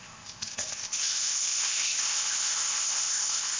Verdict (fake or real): fake